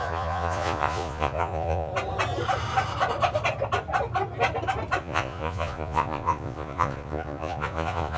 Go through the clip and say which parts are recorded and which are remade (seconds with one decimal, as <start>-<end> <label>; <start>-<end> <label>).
0.0-1.9 remade; 1.9-5.0 recorded; 5.0-8.2 remade